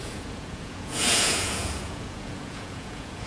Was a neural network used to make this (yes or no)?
yes